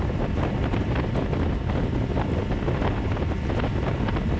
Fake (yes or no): no